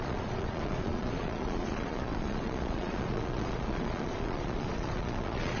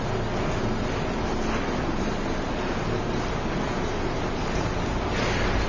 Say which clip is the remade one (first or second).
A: first